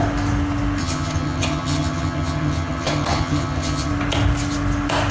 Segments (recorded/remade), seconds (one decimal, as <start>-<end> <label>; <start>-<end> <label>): 0.0-0.8 recorded; 0.8-3.9 remade; 3.9-5.1 recorded